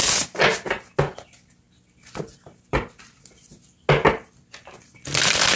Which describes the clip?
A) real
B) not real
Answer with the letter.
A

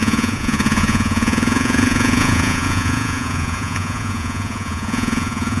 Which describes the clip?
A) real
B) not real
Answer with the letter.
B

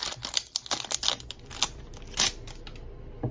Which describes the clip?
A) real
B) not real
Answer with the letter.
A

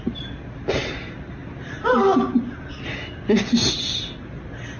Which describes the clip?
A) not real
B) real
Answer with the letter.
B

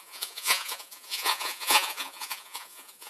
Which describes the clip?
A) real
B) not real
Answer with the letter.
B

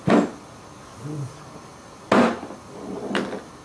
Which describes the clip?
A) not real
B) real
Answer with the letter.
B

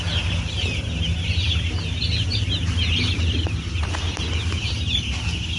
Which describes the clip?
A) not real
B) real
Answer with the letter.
B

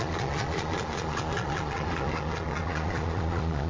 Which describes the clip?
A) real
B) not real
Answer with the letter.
B